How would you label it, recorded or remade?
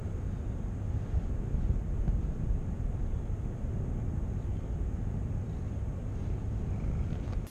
recorded